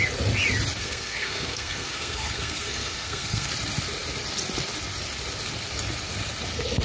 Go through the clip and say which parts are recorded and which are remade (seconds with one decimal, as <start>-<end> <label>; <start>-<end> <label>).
0.0-0.8 recorded; 0.8-3.5 remade; 3.5-6.8 recorded